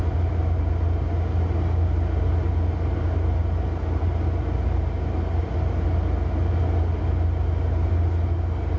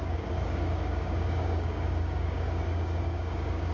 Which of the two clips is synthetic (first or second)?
second